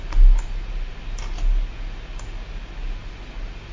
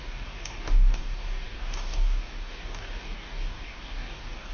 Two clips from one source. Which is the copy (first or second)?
second